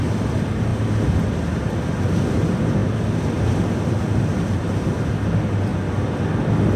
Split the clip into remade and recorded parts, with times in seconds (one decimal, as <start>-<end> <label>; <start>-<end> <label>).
0.0-6.8 recorded